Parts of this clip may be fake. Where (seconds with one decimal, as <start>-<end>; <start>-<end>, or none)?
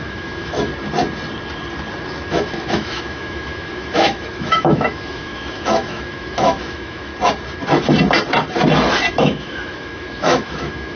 0.0-0.7; 2.3-7.1; 9.1-11.0